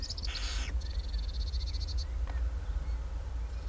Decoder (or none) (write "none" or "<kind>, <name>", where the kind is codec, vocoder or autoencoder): none